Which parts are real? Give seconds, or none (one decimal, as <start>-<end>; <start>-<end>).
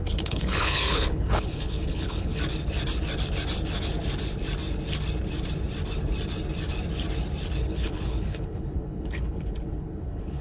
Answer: 2.4-7.6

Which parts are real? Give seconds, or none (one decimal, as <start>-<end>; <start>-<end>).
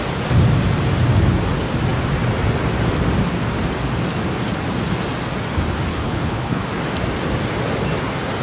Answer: 0.0-5.9; 6.6-8.4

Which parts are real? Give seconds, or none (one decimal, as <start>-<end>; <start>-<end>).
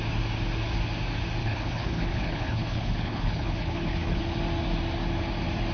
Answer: 0.0-1.4; 4.2-5.7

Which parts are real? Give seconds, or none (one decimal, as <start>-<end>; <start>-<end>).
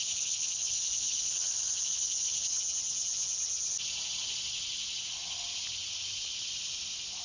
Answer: 2.6-7.2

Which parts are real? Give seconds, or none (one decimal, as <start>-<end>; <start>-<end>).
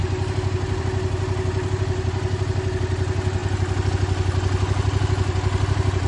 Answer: 0.0-6.1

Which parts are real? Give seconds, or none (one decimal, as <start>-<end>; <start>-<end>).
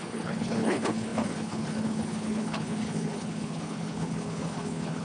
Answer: none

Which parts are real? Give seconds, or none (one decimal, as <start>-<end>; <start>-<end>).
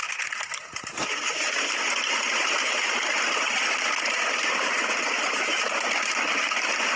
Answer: 0.0-7.0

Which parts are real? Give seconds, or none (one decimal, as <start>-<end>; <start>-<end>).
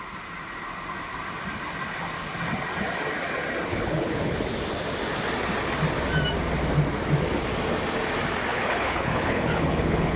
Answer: 0.0-3.7; 4.4-8.5